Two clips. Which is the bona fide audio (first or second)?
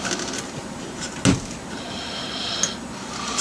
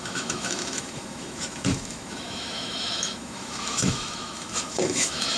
first